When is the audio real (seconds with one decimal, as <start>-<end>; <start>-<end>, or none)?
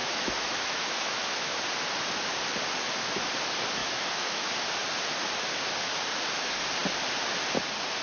1.6-3.8; 4.5-8.0